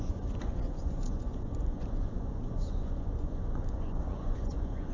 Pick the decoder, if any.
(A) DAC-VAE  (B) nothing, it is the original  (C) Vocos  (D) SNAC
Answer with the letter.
C